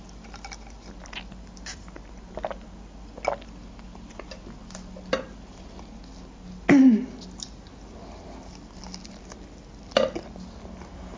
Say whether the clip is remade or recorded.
recorded